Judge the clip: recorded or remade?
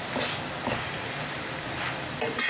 recorded